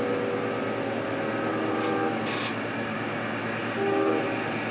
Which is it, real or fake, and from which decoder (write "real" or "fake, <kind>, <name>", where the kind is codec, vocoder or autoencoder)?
real